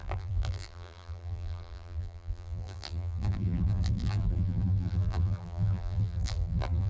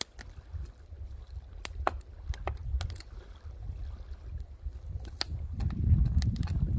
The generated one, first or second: first